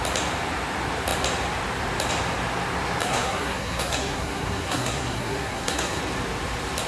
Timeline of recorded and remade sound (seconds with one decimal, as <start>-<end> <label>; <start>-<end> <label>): 0.0-3.0 recorded; 3.0-6.0 remade; 6.0-6.9 recorded